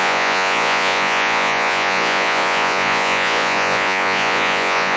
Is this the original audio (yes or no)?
no